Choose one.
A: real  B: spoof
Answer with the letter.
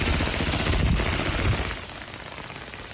A